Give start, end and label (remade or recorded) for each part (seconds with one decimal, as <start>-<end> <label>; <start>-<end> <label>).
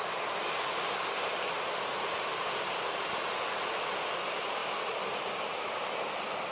0.0-6.5 recorded